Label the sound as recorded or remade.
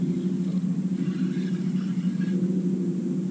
recorded